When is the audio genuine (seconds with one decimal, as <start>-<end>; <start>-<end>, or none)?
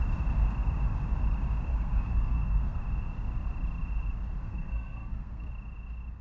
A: 0.0-1.7; 2.8-4.4; 5.5-6.2